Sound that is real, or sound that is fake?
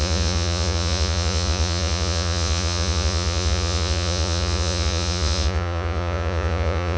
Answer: fake